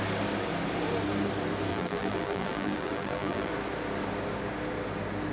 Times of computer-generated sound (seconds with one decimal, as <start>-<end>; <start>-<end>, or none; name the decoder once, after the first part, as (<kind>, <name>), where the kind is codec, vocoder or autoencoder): 1.7-3.5 (vocoder, BigVGAN v2)